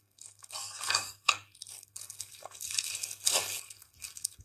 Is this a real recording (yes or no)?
no